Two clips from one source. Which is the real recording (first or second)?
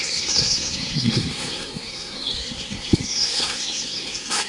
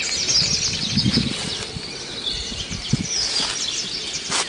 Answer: second